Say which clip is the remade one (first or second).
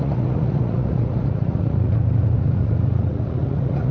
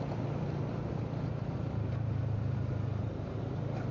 first